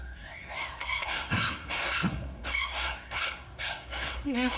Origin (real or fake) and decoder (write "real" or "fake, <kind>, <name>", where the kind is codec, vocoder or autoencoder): fake, codec, SNAC